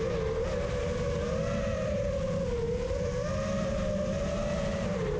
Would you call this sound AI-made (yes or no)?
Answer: no